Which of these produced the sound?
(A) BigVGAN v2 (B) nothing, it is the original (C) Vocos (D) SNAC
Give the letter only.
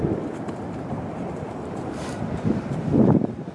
A